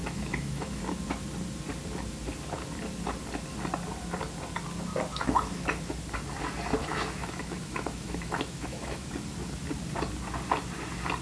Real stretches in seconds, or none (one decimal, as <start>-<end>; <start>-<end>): 0.8-5.1; 5.8-6.8; 9.1-11.2

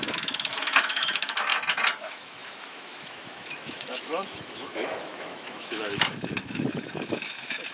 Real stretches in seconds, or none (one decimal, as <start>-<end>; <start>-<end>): 1.5-2.0